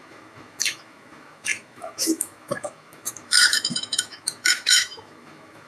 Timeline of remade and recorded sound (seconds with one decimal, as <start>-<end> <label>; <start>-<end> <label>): 0.0-5.7 remade